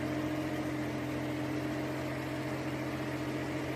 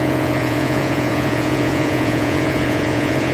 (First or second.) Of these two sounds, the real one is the first